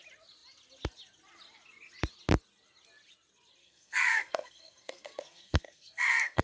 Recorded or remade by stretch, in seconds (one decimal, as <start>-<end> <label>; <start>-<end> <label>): 0.0-3.6 recorded; 3.6-6.4 remade